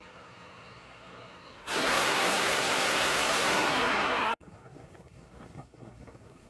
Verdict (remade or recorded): remade